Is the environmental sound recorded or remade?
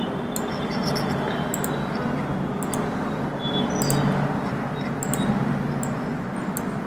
recorded